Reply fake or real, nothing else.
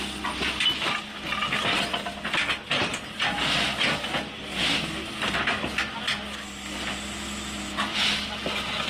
real